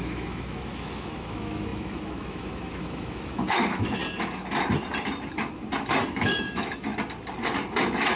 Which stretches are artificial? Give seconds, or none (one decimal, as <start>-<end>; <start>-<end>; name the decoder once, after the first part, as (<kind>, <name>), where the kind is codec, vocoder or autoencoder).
0.0-4.0 (autoencoder, DAC-VAE); 6.1-6.9